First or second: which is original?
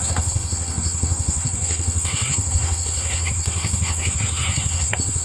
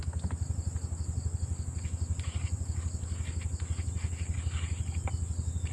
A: second